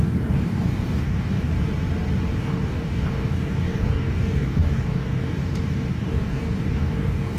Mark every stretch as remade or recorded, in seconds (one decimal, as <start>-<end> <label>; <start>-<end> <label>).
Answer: 0.0-1.5 remade; 1.5-2.4 recorded; 2.4-7.4 remade